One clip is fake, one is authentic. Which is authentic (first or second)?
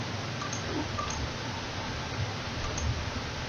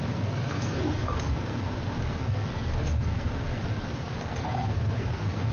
first